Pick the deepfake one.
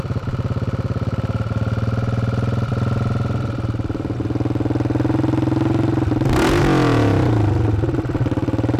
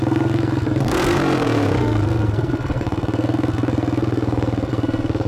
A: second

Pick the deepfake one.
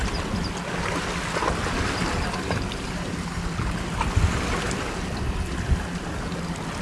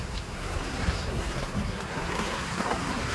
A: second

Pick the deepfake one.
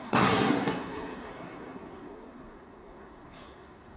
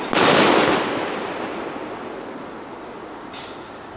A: first